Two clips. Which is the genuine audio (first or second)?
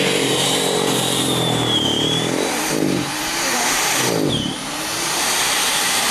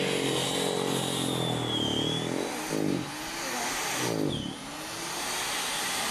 second